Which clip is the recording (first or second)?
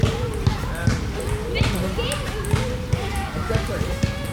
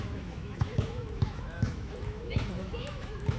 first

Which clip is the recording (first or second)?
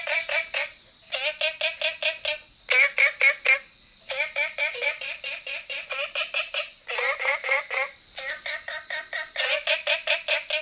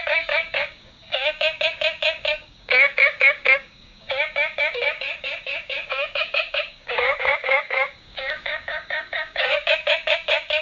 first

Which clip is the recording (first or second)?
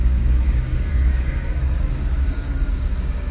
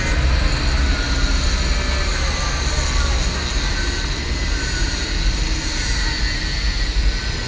second